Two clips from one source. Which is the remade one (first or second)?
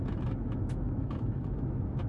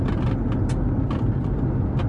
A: first